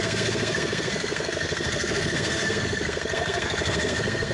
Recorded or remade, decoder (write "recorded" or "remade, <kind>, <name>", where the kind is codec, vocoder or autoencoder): remade, codec, SNAC